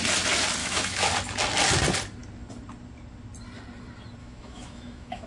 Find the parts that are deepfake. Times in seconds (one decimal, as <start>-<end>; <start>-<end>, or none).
0.6-1.1; 4.2-5.3